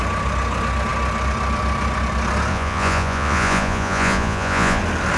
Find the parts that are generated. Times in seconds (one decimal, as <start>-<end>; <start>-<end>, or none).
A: 2.5-4.8